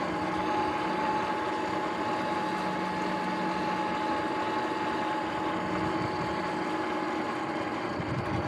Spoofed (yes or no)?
no